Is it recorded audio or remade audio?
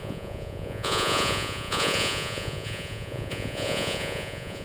remade